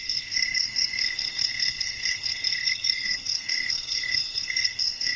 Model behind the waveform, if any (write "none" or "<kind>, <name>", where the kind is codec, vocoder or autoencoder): codec, SNAC